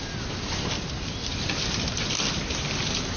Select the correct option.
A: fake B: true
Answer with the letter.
B